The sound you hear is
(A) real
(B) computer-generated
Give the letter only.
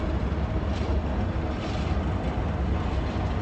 A